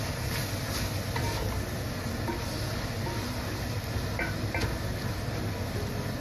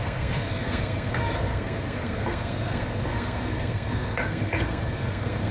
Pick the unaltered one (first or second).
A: first